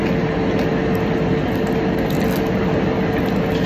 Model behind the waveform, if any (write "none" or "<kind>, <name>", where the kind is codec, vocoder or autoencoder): none